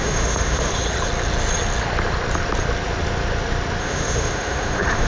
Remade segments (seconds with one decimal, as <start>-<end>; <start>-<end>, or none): 0.0-0.7; 3.8-5.1

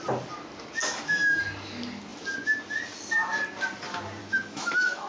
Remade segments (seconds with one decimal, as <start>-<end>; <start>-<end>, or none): 0.8-1.4; 4.2-5.1

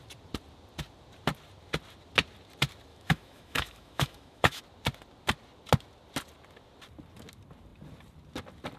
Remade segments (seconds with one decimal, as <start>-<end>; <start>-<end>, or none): 2.9-4.6

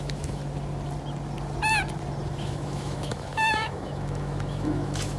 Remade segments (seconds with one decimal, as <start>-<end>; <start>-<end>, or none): 0.0-0.4; 2.4-5.2